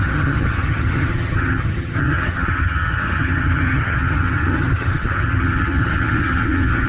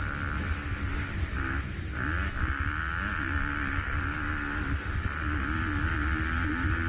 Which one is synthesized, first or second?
first